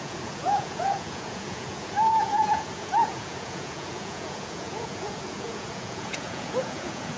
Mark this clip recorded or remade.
remade